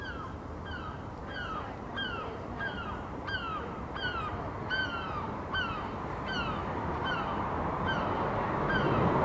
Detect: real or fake fake